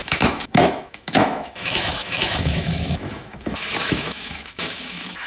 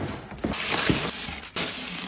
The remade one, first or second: first